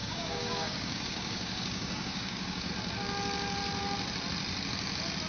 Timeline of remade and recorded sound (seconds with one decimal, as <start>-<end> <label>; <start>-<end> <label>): 0.0-2.7 remade; 2.7-5.3 recorded